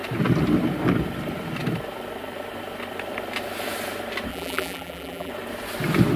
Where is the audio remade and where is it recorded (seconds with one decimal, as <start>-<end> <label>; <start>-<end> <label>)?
0.0-4.3 recorded; 4.3-5.3 remade; 5.3-6.2 recorded